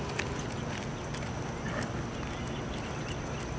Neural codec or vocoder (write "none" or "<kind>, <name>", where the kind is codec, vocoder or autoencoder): none